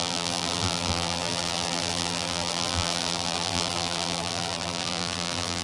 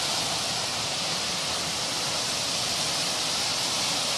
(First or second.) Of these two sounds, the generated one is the first